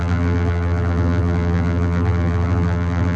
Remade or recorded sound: remade